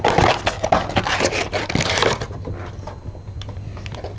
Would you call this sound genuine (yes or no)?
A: yes